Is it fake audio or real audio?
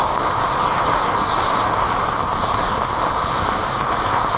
real